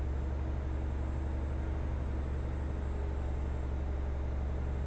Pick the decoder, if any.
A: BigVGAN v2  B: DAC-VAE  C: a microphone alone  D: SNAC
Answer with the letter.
C